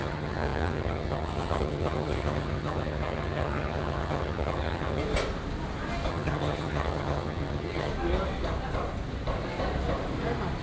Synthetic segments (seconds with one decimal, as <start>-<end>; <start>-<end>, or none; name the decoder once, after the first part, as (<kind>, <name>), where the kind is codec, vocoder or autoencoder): 0.0-5.0 (vocoder, HiFi-GAN); 6.1-7.9